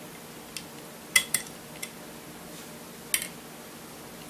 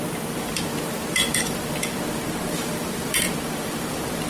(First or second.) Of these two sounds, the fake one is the second